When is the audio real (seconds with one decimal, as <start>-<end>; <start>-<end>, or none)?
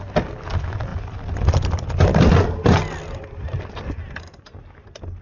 0.0-0.9; 1.5-5.2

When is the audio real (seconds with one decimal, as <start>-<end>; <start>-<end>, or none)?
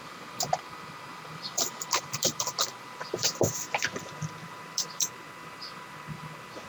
0.0-1.1; 5.1-6.7